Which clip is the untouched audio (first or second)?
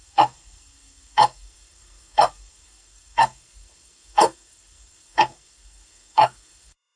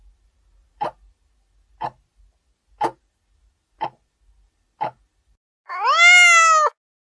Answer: second